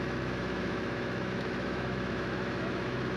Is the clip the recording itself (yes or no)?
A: no